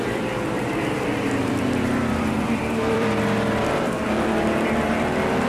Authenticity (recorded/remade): remade